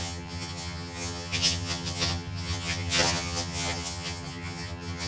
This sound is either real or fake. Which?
fake